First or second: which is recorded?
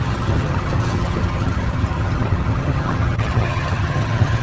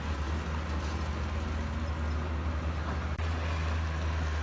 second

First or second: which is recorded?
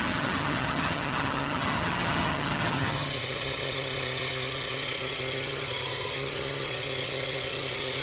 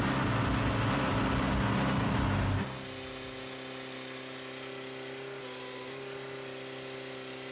second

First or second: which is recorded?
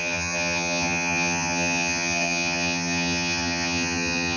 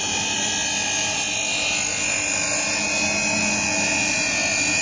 second